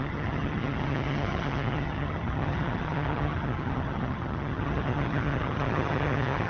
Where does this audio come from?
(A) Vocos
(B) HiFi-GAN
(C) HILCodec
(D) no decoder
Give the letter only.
B